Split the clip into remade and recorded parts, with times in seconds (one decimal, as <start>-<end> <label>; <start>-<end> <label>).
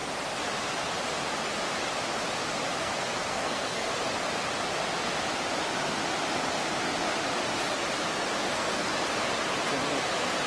0.0-2.8 recorded; 2.8-3.9 remade; 3.9-8.4 recorded; 8.4-8.9 remade; 8.9-10.5 recorded